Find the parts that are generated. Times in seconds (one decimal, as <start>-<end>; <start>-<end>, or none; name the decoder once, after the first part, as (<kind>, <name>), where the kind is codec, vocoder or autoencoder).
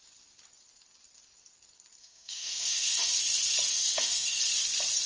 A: 2.0-3.1 (autoencoder, DAC-VAE); 3.7-4.4